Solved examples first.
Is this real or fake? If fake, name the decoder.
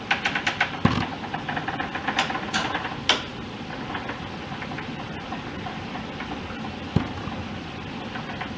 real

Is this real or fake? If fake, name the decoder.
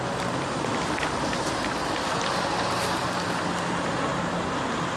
real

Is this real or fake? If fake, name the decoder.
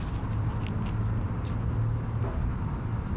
real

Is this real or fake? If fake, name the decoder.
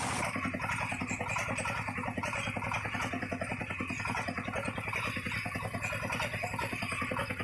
real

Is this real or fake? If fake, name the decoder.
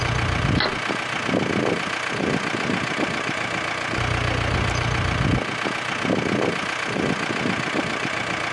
real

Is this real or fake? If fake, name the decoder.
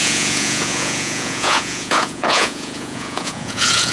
fake, vocoder, Vocos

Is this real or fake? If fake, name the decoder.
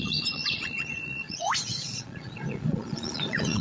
fake, vocoder, Vocos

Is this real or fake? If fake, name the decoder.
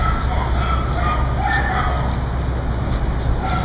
real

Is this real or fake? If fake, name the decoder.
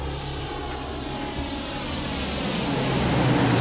real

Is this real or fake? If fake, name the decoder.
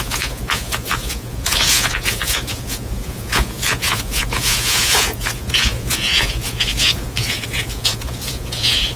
fake, vocoder, Vocos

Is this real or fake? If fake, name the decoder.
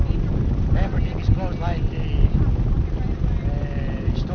real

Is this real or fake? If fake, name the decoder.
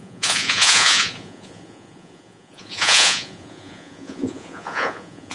fake, vocoder, Vocos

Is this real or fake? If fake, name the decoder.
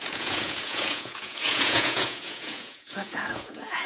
fake, vocoder, Vocos